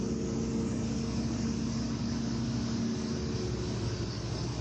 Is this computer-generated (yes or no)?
yes